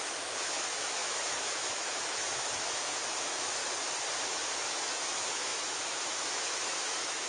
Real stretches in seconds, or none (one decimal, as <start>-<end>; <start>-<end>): 3.6-4.3